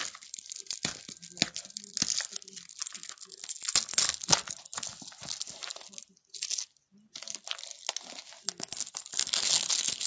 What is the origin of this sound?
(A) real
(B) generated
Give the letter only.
A